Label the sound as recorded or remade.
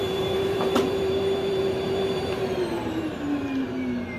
remade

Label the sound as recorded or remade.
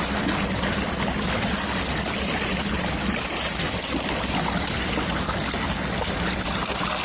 recorded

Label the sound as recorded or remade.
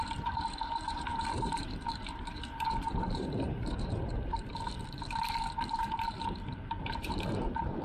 remade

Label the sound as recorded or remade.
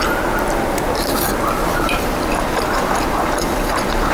recorded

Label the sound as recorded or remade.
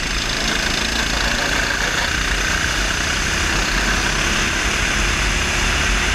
recorded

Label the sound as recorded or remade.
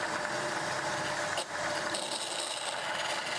recorded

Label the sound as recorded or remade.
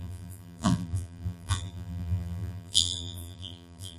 remade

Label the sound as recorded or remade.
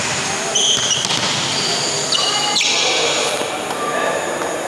recorded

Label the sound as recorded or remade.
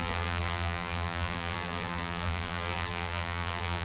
remade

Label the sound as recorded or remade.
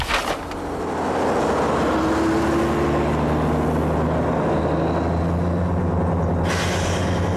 recorded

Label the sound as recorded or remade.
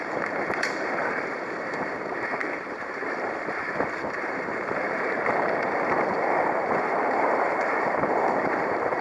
remade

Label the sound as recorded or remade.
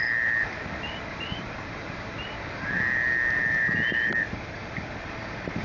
remade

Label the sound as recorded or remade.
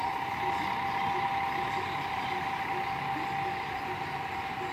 recorded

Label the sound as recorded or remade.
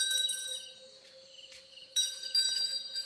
remade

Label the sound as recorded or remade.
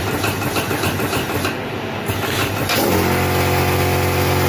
recorded